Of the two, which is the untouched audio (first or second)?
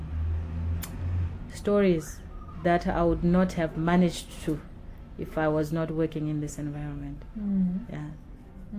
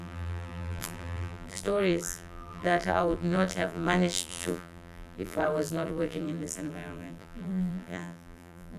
first